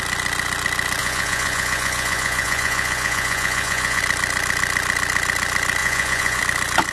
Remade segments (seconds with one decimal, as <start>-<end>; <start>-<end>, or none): 1.0-4.0; 5.8-6.4